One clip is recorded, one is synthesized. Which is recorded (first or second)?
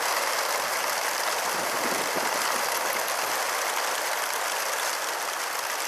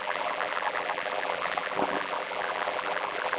first